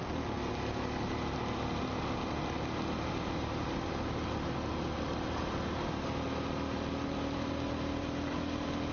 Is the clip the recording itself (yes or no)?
yes